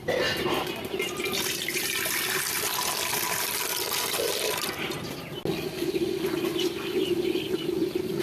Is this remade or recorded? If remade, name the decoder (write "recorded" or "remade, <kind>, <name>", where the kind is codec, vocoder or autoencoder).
recorded